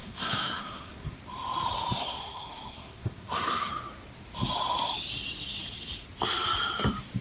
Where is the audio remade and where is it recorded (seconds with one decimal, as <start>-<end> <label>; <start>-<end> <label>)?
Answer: 0.0-1.2 remade; 1.2-2.0 recorded; 2.0-3.7 remade; 3.7-7.2 recorded